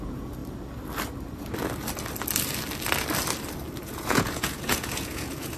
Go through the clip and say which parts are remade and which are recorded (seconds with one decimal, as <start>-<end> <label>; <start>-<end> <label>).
0.0-0.4 remade; 0.4-3.8 recorded; 3.8-5.6 remade